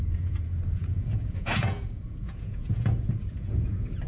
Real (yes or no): no